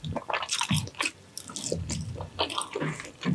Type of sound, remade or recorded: recorded